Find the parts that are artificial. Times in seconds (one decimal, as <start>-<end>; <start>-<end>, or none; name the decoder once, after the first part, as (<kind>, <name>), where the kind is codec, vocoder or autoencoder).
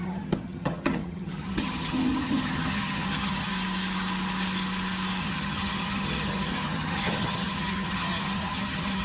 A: 0.0-3.5 (vocoder, HiFi-GAN); 5.2-9.0